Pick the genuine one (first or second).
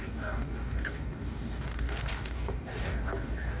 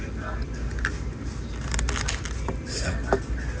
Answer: second